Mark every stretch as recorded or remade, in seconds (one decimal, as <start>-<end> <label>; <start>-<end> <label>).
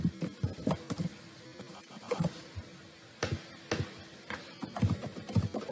0.0-1.1 remade; 1.1-1.7 recorded; 1.7-2.7 remade; 2.7-4.1 recorded; 4.1-5.7 remade